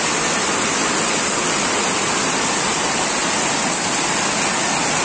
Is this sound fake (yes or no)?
no